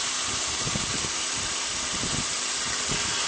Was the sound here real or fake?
real